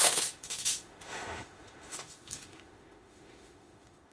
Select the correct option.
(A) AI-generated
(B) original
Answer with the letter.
A